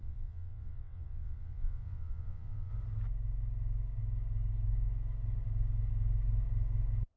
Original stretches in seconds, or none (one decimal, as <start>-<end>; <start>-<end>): 2.7-7.2